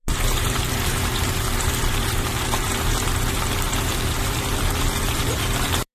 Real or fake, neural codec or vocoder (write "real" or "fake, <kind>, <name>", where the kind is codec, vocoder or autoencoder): fake, vocoder, BigVGAN v2